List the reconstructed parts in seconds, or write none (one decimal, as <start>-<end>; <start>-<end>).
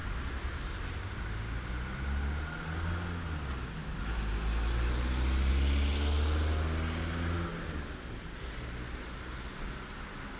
none